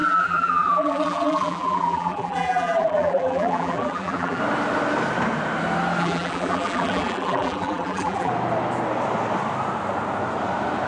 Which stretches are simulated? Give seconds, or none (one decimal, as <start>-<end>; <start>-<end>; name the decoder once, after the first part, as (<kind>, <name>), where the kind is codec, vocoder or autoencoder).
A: 0.0-4.4 (vocoder, BigVGAN v2); 6.0-8.3